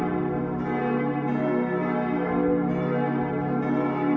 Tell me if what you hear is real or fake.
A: real